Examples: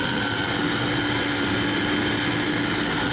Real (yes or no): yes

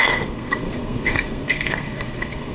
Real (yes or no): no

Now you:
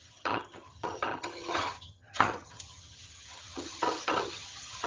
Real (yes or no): no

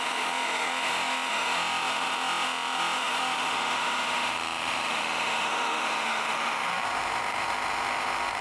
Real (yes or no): no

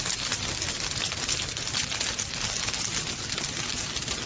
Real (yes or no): yes